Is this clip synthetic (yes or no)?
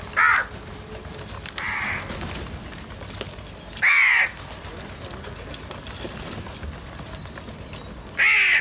no